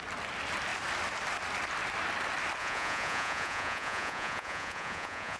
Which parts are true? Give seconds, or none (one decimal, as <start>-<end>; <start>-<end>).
0.0-2.6